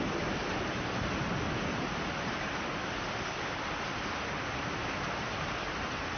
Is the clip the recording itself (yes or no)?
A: yes